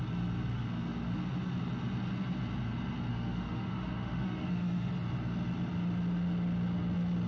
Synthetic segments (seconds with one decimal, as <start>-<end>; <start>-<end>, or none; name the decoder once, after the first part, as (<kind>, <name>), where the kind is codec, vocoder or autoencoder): 3.1-4.9 (autoencoder, DAC-VAE)